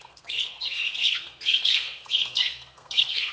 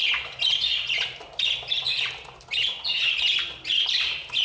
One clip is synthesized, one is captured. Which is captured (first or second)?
second